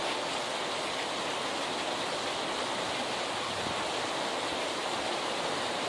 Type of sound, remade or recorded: recorded